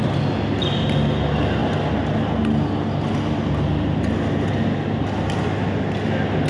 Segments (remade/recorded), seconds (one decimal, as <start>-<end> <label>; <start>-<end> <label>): 0.0-6.5 recorded